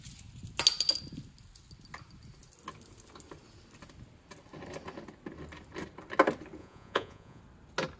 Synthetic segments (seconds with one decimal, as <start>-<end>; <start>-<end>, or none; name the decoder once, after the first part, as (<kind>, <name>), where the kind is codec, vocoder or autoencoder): 6.6-7.4 (vocoder, Vocos)

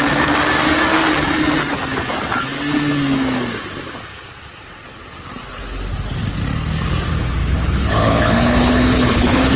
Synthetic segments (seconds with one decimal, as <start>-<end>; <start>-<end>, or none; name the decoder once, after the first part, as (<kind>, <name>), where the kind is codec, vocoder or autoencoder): 7.4-9.6 (codec, HILCodec)

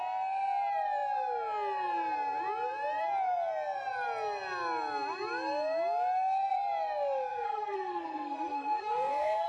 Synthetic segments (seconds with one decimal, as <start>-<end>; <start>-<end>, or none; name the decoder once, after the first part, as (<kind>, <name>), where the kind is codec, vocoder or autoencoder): 7.3-9.5 (codec, SNAC)

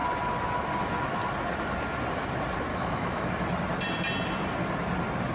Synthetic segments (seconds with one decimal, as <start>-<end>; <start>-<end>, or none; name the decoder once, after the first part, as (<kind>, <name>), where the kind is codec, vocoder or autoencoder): 2.7-3.3 (autoencoder, DAC-VAE)